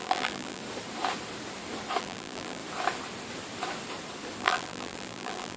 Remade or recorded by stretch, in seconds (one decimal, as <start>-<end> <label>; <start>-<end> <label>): 0.0-0.6 remade; 0.6-2.0 recorded; 2.0-2.6 remade; 2.6-4.4 recorded; 4.4-5.6 remade